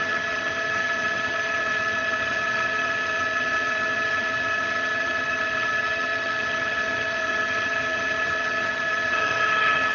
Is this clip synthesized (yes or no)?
yes